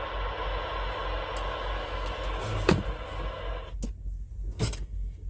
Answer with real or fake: real